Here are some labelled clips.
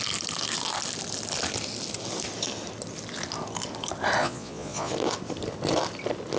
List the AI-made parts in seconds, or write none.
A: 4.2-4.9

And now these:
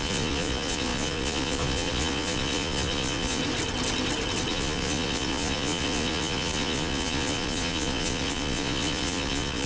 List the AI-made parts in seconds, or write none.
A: 0.0-3.4; 4.5-9.7

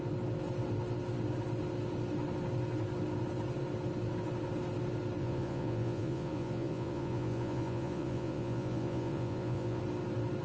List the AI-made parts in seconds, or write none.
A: 5.2-9.8

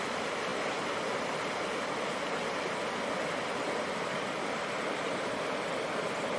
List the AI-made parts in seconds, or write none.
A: none

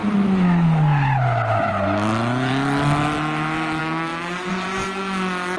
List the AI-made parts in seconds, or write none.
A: 3.8-4.5

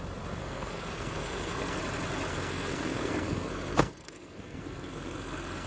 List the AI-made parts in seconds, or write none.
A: 0.4-1.8; 2.3-5.7

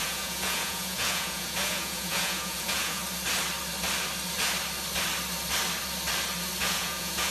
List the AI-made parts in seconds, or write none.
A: 0.0-3.0; 6.6-7.3